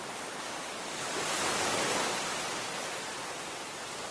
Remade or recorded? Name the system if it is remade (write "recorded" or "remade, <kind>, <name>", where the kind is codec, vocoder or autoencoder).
recorded